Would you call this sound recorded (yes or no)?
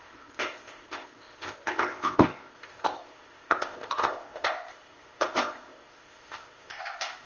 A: no